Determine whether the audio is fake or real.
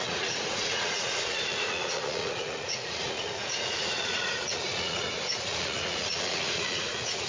fake